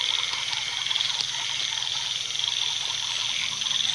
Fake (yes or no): no